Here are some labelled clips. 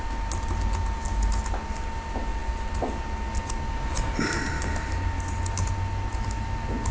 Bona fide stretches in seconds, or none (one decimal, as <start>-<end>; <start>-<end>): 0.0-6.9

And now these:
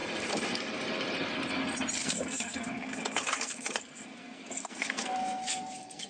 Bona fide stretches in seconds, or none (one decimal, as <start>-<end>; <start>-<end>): 0.0-2.0

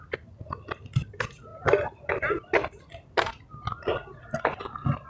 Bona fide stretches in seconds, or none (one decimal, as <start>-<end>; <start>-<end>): 0.0-5.1

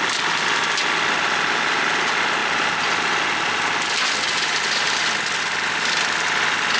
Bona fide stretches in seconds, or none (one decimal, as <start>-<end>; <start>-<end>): 0.0-6.8